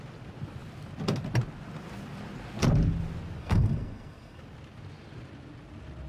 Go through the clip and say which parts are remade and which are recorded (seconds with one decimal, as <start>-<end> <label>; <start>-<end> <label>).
0.0-3.4 recorded; 3.4-4.4 remade; 4.4-6.1 recorded